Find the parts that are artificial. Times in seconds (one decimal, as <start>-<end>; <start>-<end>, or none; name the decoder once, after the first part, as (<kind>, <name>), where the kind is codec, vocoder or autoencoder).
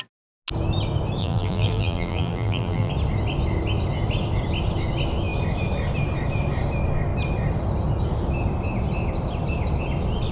1.2-2.9 (vocoder, BigVGAN v2)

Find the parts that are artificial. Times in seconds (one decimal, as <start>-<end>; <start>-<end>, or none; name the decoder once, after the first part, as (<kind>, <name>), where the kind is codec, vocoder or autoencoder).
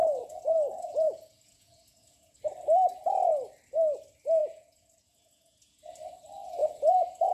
0.0-2.4 (vocoder, Vocos); 4.4-5.9; 6.6-7.3